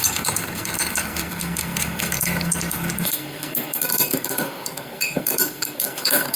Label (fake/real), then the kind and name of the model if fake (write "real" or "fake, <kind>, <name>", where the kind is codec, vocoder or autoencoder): fake, codec, SNAC